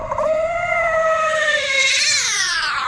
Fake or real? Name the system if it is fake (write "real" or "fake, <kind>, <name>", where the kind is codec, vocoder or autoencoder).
fake, vocoder, BigVGAN v2